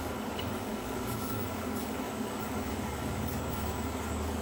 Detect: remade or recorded remade